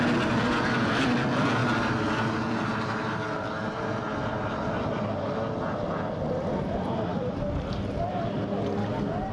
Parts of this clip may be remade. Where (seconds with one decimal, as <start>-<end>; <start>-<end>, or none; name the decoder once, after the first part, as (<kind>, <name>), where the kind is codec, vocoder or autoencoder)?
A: none